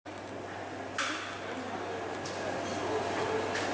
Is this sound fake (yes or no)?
no